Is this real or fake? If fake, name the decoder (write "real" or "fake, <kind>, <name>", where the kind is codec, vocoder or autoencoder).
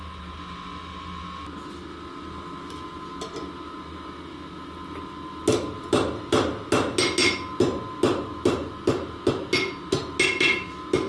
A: real